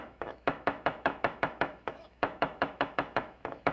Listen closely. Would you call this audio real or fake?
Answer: fake